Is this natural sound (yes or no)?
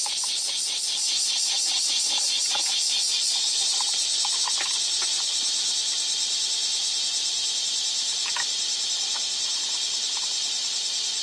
yes